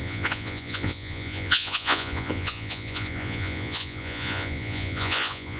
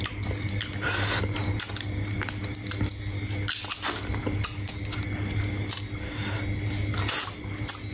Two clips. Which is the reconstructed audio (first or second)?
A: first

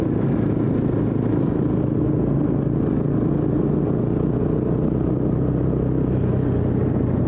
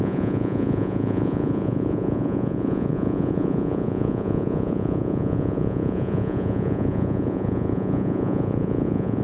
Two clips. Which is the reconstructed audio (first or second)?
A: second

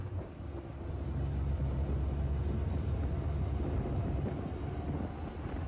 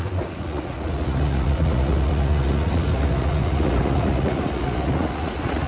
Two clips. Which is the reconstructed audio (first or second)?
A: second